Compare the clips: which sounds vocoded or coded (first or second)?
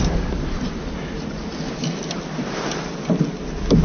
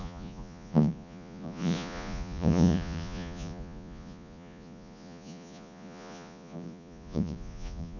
second